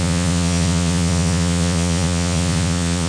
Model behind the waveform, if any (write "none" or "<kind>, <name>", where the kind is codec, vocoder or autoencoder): vocoder, Vocos